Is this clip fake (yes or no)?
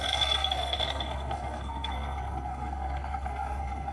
yes